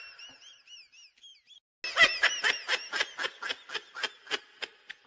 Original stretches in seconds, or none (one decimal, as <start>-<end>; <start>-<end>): 0.0-5.1